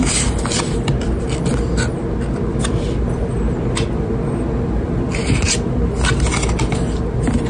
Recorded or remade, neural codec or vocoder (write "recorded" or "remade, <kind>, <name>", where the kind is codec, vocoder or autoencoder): recorded